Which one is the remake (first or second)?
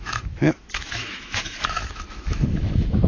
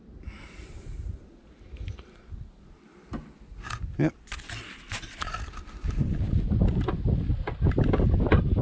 first